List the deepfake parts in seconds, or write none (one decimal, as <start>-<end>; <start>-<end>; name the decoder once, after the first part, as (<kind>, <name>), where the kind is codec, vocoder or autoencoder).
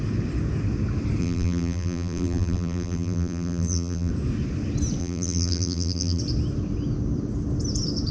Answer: 1.2-4.1 (vocoder, BigVGAN v2); 5.0-6.2